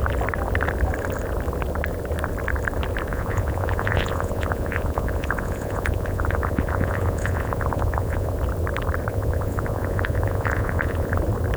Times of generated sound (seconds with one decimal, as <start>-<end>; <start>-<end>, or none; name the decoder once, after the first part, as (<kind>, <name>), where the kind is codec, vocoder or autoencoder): 3.1-8.3 (vocoder, Vocos); 9.1-11.2